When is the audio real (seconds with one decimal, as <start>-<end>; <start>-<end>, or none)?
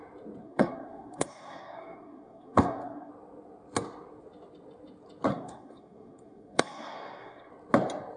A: 0.0-0.4; 3.1-5.3; 7.5-8.2